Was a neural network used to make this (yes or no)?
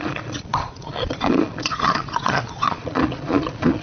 yes